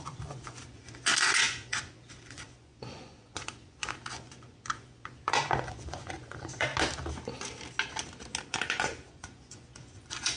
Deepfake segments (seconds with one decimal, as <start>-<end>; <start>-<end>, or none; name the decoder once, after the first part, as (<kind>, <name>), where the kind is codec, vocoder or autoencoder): 0.0-6.7 (vocoder, Vocos); 8.4-10.4